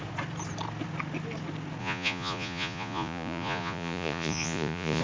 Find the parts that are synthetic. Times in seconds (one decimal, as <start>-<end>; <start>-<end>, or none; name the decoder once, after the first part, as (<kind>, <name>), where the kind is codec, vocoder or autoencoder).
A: 1.8-5.0 (vocoder, Vocos)